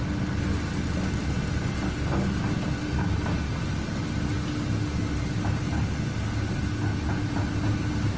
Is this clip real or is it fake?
real